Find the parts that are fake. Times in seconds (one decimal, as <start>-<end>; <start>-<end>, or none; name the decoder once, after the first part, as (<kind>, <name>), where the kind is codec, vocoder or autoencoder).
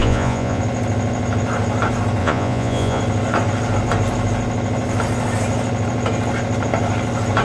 0.0-0.6 (vocoder, Vocos); 2.2-3.0